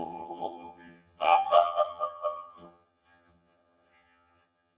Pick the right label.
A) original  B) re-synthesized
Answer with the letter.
B